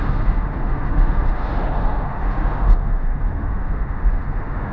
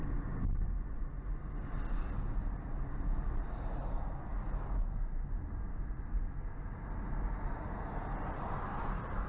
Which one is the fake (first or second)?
first